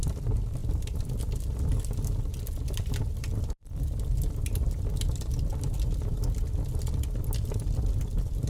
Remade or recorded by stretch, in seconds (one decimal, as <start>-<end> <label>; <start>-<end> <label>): 0.0-0.6 recorded; 0.6-5.1 remade; 5.1-8.5 recorded